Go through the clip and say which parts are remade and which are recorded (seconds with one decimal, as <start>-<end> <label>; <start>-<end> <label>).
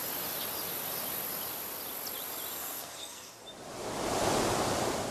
0.0-2.5 recorded; 2.5-3.4 remade; 3.4-5.1 recorded